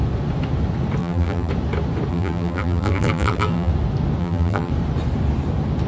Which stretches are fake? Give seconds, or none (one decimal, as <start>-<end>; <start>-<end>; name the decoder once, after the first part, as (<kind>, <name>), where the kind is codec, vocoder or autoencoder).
1.0-1.5 (vocoder, BigVGAN v2); 2.1-3.7; 4.2-4.7